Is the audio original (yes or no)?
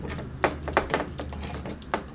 yes